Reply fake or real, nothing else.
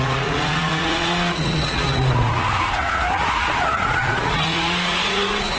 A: fake